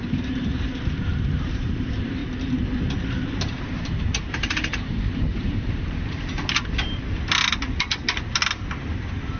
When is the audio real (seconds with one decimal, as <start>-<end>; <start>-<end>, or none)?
2.2-3.3; 6.3-8.8